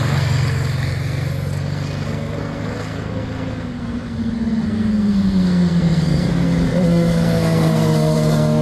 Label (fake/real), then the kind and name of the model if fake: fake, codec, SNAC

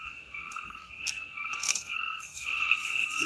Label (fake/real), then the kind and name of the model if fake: fake, codec, SNAC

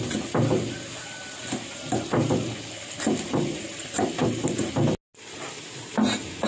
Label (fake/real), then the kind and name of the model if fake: real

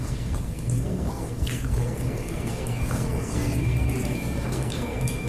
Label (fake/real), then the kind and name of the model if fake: fake, codec, SNAC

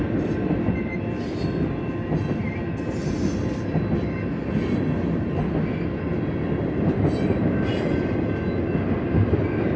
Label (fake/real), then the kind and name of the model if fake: real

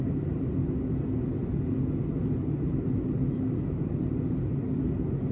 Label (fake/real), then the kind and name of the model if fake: real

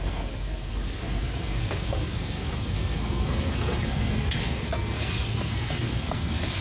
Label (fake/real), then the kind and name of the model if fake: fake, codec, SNAC